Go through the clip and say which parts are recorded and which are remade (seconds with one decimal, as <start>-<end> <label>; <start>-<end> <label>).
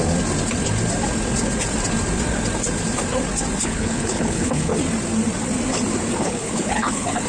0.0-3.6 recorded; 3.6-4.7 remade; 4.7-6.2 recorded; 6.2-7.3 remade